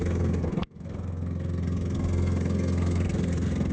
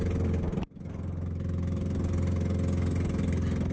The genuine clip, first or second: second